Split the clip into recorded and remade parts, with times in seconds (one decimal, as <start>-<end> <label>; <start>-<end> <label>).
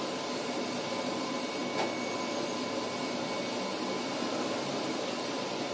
0.0-5.7 recorded